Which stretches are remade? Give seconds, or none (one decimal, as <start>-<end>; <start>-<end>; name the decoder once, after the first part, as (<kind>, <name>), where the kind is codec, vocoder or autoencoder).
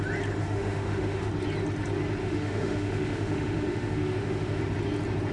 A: 0.4-1.3 (autoencoder, DAC-VAE); 2.2-4.6